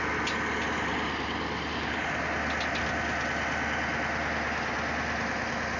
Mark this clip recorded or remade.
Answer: recorded